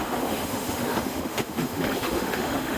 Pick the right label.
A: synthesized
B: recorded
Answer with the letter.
A